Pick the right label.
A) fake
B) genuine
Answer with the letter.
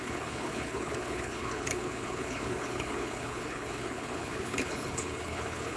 A